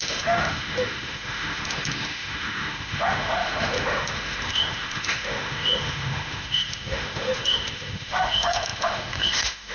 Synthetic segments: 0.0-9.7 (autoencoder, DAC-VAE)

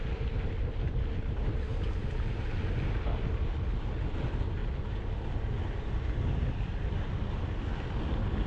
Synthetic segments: none

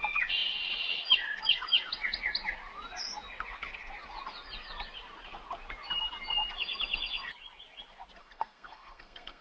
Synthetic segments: 8.2-9.4 (codec, SNAC)